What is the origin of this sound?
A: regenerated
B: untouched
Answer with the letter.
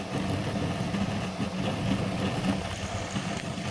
B